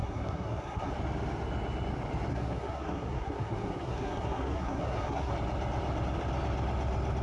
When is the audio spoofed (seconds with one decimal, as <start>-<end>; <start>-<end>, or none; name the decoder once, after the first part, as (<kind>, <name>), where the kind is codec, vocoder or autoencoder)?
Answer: 0.0-0.9 (codec, SNAC); 2.3-5.3